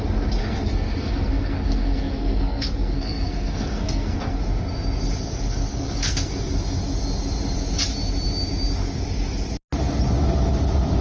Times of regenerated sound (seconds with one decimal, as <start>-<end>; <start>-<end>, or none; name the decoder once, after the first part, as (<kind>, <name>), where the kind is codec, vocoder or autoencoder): 0.4-4.4 (codec, SNAC); 5.7-6.5